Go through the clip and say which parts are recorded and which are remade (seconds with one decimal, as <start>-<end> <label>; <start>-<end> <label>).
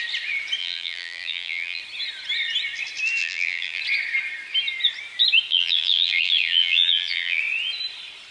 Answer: 0.0-0.6 recorded; 0.6-1.8 remade; 1.8-3.2 recorded; 3.2-3.8 remade; 3.8-5.5 recorded; 5.5-7.4 remade; 7.4-8.3 recorded